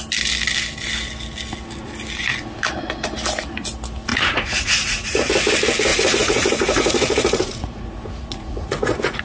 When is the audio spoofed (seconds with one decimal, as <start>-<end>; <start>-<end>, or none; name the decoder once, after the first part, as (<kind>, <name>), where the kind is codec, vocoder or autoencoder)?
4.1-5.3 (vocoder, Vocos); 5.9-9.2